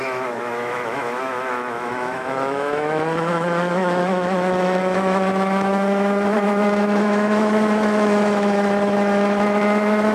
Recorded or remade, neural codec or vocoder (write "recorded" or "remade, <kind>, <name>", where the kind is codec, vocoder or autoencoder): remade, autoencoder, DAC-VAE